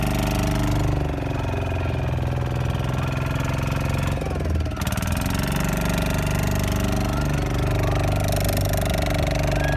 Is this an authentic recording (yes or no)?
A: yes